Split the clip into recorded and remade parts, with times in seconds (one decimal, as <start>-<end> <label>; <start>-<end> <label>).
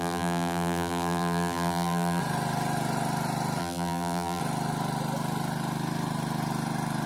0.0-2.2 remade; 2.2-3.6 recorded; 3.6-4.4 remade; 4.4-7.1 recorded